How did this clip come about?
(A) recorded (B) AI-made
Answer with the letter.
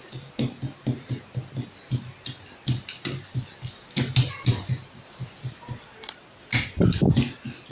A